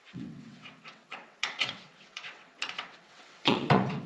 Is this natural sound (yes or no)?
no